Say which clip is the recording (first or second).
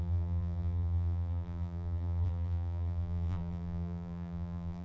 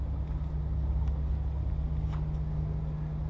second